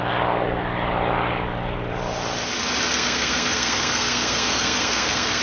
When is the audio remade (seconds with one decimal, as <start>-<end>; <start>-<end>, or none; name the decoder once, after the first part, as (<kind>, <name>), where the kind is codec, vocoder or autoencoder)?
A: 2.9-5.4 (codec, SNAC)